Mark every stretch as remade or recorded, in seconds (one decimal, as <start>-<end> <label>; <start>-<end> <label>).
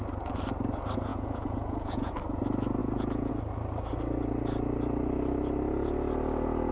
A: 0.0-1.1 recorded; 1.1-2.1 remade; 2.1-2.8 recorded; 2.8-3.3 remade; 3.3-6.7 recorded